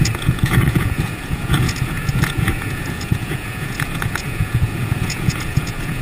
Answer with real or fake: fake